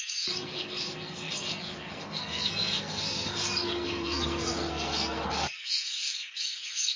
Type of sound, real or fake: fake